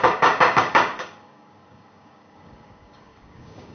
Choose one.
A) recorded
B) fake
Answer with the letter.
B